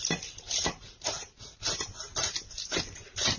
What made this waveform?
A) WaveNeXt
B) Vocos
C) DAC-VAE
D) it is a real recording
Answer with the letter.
D